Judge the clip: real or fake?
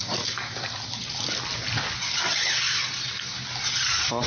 real